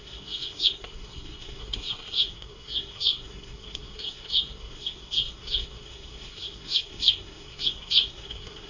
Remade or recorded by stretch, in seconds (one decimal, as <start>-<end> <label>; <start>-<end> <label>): 0.0-8.7 remade